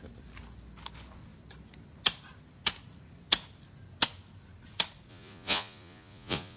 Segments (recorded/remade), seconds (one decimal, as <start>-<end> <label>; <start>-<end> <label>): 0.0-5.1 recorded; 5.1-6.6 remade